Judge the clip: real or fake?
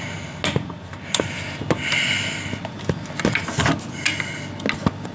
real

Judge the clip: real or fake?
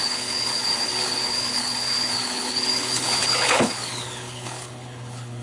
fake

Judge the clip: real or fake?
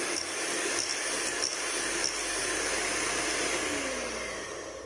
real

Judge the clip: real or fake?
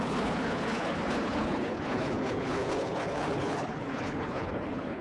fake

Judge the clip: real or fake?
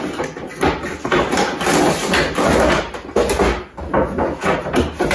real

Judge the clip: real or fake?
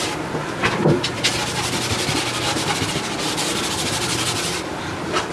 real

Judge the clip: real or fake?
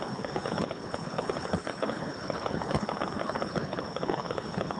fake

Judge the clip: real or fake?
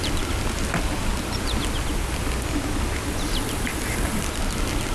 real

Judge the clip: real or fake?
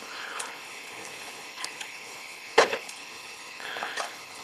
fake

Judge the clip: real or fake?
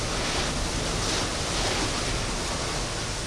real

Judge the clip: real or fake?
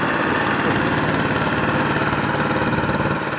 real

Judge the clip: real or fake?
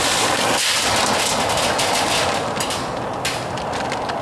real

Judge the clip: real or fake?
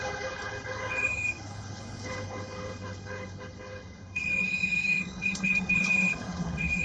fake